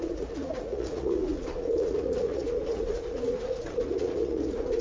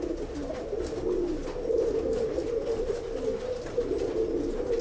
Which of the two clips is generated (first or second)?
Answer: first